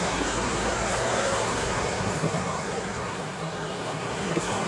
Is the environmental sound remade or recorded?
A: remade